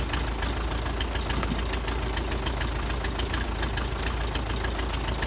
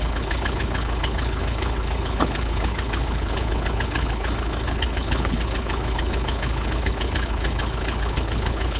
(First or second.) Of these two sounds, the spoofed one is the second